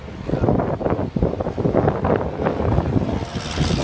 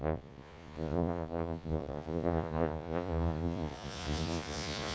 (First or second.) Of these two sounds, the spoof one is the second